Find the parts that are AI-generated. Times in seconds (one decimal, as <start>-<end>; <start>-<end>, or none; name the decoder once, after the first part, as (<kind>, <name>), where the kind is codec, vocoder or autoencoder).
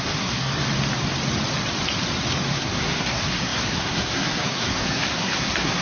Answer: 0.0-0.5 (codec, SNAC); 2.5-5.8